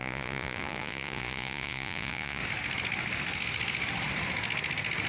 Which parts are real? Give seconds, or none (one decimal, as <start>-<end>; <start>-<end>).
2.4-5.1